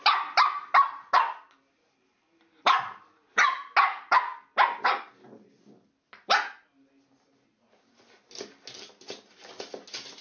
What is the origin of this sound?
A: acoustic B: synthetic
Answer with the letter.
A